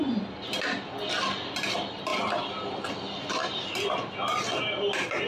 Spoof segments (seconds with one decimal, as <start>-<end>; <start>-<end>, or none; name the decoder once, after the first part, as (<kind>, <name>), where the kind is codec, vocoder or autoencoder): none